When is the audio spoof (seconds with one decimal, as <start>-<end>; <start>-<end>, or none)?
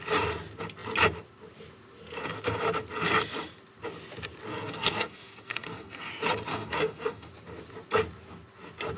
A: 4.5-6.1; 6.5-7.3